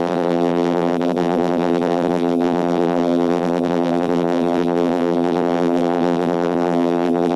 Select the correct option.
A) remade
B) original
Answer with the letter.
A